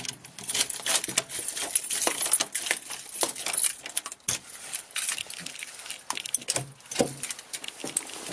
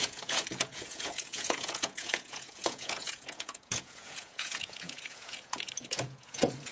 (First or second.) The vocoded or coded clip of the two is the second